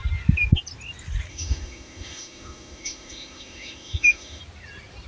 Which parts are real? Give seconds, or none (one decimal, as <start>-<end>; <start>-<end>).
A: 0.0-1.3; 4.4-5.1